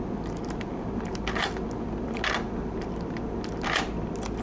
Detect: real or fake real